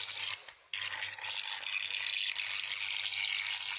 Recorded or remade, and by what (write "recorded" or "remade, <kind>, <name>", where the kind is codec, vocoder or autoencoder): recorded